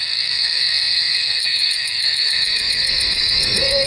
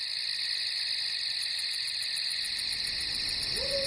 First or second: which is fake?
first